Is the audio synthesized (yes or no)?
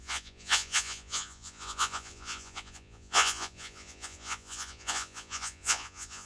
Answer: yes